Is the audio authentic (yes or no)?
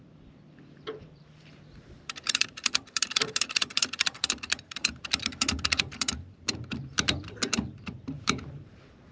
no